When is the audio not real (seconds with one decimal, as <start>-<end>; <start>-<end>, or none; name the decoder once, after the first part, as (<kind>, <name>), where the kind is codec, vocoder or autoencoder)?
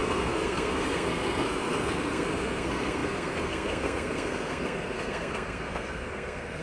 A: 0.0-6.6 (codec, SNAC)